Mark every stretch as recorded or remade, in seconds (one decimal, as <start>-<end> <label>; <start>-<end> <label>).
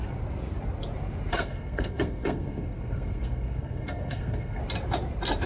0.0-1.3 recorded; 1.3-4.6 remade; 4.6-5.5 recorded